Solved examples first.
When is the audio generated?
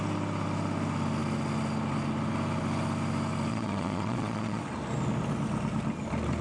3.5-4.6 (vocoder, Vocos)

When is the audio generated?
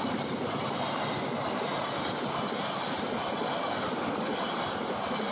none